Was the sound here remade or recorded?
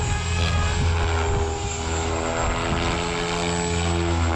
recorded